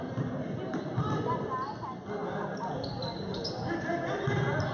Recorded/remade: recorded